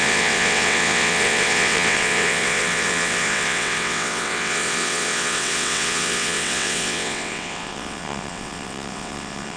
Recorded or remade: remade